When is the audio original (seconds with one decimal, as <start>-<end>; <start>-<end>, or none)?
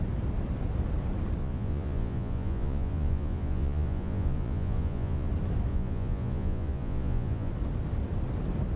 0.0-1.4; 5.3-5.7; 7.5-8.8